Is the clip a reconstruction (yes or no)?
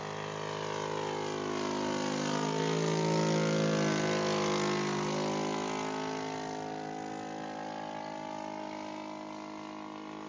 no